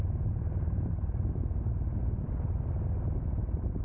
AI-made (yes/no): no